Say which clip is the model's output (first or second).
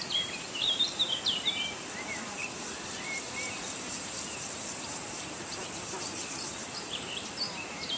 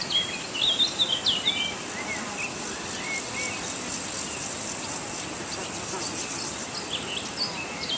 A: first